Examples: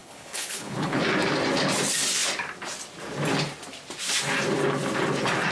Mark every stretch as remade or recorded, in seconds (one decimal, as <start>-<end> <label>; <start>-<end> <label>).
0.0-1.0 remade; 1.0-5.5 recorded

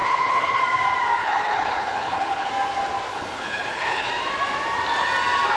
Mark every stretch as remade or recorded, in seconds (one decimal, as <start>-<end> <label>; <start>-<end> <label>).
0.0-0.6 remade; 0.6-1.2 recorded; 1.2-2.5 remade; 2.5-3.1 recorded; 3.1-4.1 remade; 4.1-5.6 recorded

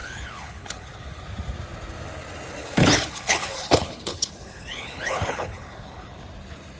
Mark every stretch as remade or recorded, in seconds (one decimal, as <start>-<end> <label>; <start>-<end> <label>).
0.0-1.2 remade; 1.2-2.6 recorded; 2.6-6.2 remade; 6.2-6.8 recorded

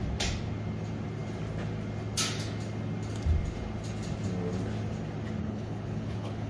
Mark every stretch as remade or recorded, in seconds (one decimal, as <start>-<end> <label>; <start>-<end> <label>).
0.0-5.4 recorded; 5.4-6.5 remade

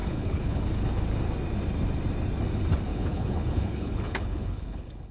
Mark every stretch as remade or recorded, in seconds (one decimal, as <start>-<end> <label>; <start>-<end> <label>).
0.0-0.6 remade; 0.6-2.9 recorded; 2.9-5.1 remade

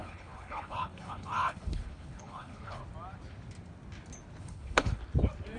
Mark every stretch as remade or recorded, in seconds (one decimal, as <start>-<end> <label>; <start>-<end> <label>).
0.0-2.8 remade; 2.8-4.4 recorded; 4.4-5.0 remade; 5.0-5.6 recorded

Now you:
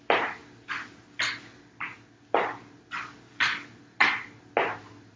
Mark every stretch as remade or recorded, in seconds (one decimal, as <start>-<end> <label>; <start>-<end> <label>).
0.0-5.2 recorded